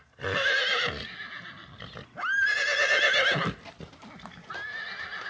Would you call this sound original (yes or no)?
yes